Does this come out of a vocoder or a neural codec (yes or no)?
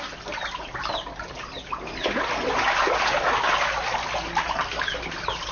no